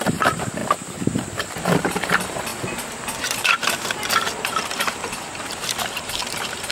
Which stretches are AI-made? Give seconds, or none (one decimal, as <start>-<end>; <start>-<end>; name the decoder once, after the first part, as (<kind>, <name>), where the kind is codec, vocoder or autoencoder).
0.0-0.6 (vocoder, BigVGAN v2); 1.4-2.5; 3.2-3.6; 4.4-6.7